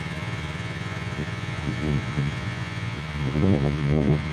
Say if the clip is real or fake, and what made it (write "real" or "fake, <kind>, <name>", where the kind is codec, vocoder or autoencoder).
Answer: fake, vocoder, Vocos